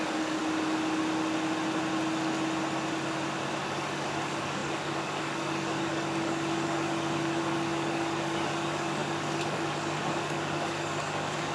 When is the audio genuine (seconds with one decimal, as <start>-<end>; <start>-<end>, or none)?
0.4-3.6